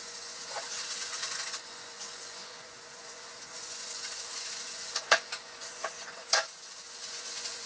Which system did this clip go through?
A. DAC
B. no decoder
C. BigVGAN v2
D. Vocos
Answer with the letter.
D